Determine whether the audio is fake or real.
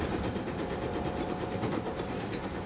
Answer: fake